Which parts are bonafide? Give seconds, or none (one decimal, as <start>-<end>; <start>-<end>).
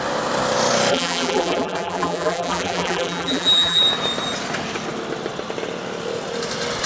0.0-0.9; 3.8-6.9